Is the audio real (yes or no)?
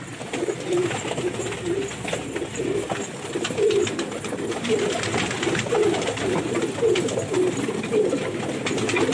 yes